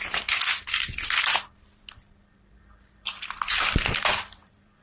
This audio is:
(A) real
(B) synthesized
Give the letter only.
B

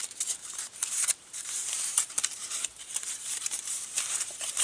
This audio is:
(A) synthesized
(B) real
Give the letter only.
A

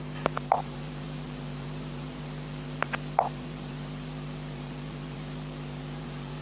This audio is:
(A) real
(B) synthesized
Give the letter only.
B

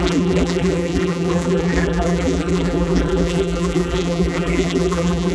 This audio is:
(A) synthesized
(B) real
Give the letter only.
A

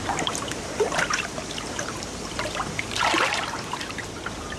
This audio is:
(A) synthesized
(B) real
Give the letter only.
A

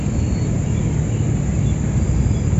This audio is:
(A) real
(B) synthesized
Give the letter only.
A